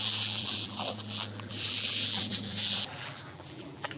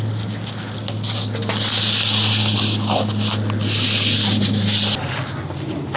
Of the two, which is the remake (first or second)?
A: first